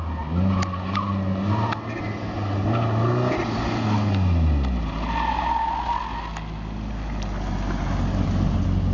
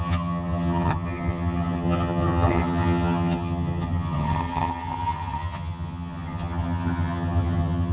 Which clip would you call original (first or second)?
first